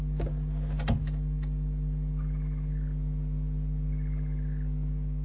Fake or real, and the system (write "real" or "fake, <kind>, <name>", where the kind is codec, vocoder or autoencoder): real